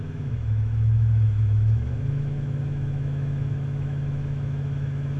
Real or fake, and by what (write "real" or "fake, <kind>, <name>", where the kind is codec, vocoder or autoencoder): fake, autoencoder, DAC-VAE